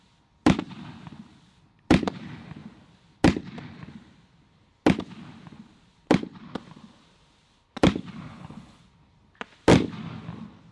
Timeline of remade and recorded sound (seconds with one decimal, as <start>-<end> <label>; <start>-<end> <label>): 0.0-8.3 recorded; 8.3-8.8 remade; 8.8-10.7 recorded